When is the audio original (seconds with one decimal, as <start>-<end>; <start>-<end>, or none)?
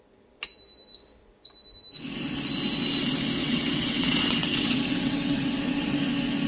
0.0-3.4; 6.0-6.5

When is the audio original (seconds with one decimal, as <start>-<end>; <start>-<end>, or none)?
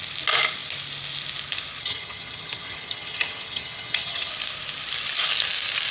0.0-1.8; 4.3-5.9